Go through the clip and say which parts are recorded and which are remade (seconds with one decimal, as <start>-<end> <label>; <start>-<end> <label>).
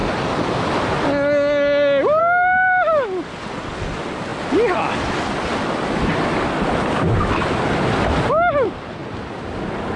0.0-10.0 recorded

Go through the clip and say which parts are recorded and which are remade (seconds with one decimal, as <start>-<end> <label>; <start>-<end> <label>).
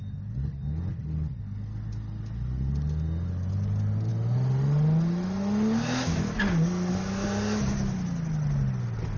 0.0-9.2 recorded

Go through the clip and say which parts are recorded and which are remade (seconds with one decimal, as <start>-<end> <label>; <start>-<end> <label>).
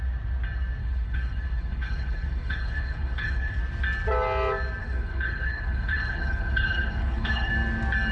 0.0-0.8 recorded; 0.8-3.6 remade; 3.6-4.8 recorded; 4.8-7.5 remade; 7.5-8.1 recorded